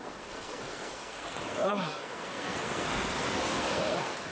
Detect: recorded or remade remade